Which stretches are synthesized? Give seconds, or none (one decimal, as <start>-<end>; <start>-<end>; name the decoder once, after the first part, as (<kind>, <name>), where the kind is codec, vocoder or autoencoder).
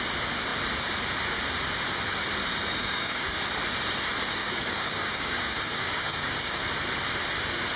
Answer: 2.8-3.4 (codec, DAC); 4.4-6.6